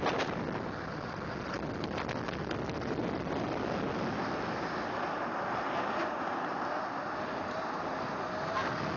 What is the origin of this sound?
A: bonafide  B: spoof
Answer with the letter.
A